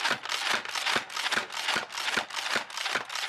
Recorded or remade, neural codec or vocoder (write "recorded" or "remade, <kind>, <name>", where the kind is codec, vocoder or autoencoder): recorded